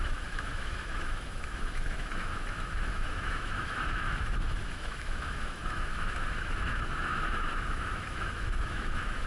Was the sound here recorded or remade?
remade